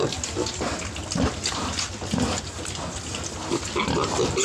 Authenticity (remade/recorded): recorded